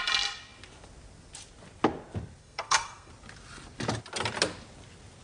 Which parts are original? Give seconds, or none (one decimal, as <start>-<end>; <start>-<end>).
0.0-2.4; 3.1-5.2